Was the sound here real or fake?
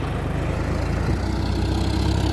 real